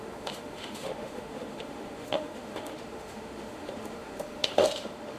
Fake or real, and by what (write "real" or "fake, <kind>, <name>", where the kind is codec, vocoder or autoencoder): fake, autoencoder, DAC-VAE